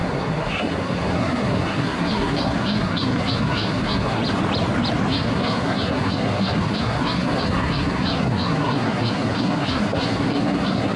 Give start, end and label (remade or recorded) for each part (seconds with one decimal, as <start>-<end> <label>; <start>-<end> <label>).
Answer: 0.0-4.2 remade; 4.2-5.1 recorded; 5.1-11.0 remade